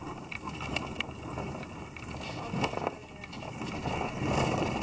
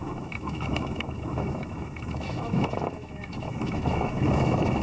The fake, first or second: second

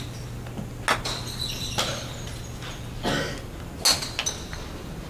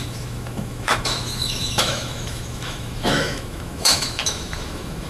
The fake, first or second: second